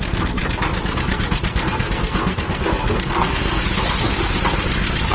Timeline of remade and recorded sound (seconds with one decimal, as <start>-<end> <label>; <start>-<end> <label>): 0.0-0.4 remade; 0.4-1.0 recorded; 1.0-3.6 remade; 3.6-5.1 recorded